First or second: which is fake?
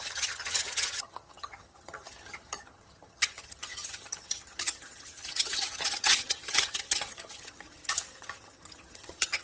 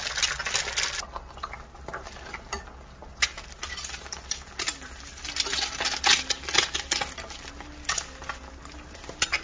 first